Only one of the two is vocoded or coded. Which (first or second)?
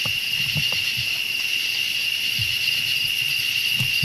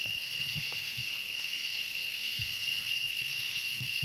second